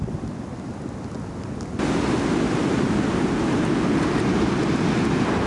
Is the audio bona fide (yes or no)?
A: yes